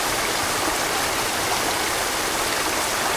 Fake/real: fake